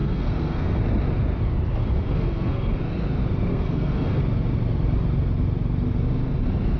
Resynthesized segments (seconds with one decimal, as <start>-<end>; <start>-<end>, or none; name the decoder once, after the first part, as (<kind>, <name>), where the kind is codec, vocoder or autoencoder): 0.0-0.8 (codec, SNAC); 1.8-2.8; 3.5-4.2